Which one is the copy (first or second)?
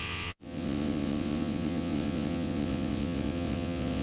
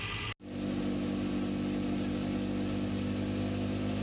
first